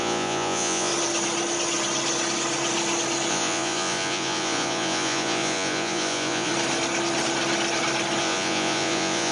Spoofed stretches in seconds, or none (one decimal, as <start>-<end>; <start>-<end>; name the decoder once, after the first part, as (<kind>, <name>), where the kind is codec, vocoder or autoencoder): 0.0-0.9 (vocoder, Vocos); 3.3-6.5; 8.2-9.3